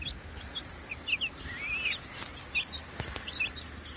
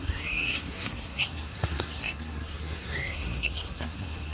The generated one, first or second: second